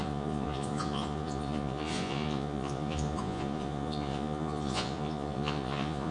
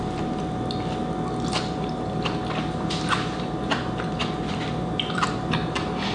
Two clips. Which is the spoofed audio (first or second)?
first